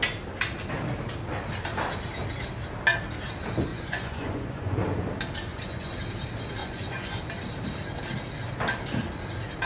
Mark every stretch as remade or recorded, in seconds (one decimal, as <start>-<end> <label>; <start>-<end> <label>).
0.0-3.7 recorded; 3.7-4.8 remade; 4.8-5.5 recorded; 5.5-6.0 remade; 6.0-6.6 recorded; 6.6-7.2 remade; 7.2-9.7 recorded